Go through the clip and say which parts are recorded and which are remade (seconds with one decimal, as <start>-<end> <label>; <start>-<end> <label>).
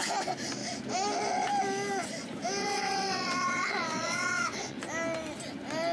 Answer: 0.0-2.6 recorded; 2.6-4.8 remade; 4.8-5.9 recorded